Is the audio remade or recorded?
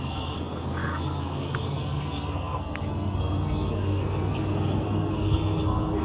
remade